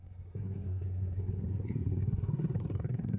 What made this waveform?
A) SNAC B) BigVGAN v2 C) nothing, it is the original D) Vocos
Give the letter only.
A